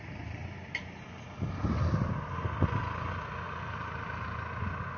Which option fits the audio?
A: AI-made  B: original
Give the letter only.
B